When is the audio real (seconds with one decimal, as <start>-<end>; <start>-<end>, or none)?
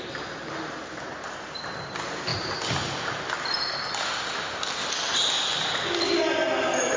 0.0-7.0